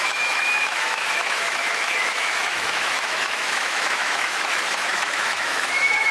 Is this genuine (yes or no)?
no